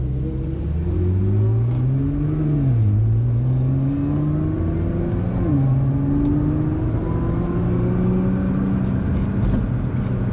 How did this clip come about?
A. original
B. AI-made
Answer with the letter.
A